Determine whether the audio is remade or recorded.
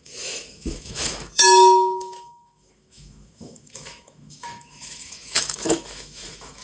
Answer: remade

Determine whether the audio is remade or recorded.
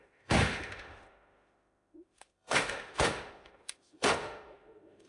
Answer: remade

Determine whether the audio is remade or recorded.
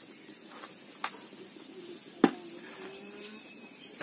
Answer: recorded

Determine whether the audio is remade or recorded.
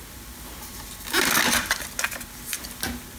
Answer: recorded